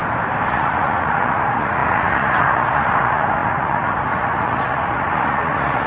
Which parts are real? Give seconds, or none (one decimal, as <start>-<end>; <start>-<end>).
0.0-0.5